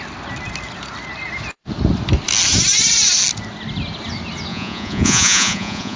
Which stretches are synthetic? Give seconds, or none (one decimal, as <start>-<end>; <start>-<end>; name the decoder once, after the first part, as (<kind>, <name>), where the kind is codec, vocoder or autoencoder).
4.5-6.0 (vocoder, Vocos)